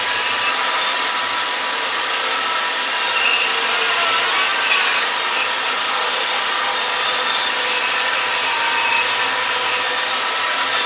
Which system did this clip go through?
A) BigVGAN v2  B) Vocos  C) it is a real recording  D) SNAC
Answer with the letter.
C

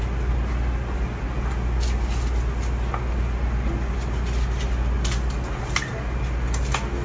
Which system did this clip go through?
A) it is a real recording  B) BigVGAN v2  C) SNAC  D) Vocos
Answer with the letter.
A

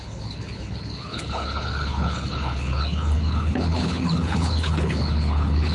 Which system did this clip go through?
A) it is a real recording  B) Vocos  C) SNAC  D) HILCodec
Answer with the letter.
D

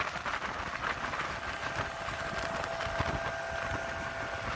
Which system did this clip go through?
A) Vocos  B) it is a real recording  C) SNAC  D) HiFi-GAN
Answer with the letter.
B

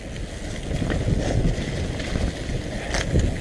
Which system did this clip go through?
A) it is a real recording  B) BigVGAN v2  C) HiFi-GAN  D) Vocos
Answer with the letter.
A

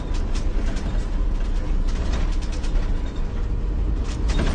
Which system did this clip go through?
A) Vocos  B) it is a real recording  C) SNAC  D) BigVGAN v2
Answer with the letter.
B